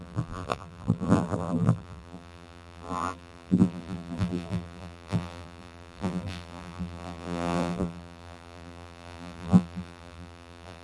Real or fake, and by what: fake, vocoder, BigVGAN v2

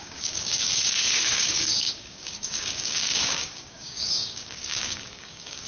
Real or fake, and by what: fake, codec, DAC